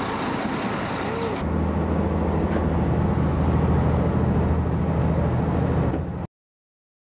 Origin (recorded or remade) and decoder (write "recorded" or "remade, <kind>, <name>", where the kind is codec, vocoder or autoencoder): recorded